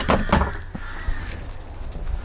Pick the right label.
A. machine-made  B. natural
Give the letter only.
B